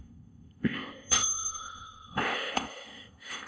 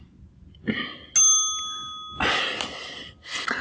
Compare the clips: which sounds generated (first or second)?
first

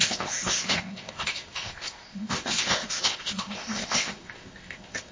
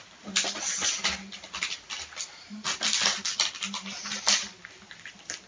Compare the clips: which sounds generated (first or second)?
first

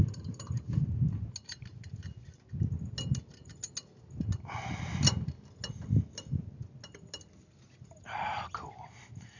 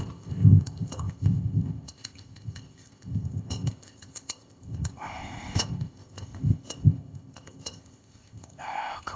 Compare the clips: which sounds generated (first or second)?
second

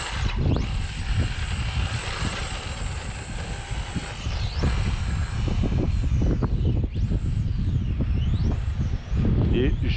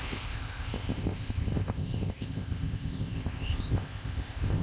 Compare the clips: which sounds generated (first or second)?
second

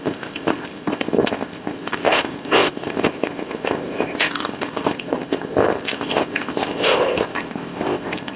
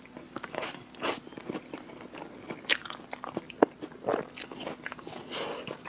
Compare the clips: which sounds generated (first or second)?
first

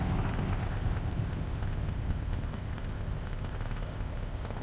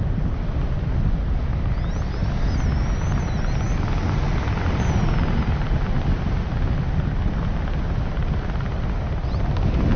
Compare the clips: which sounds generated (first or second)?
first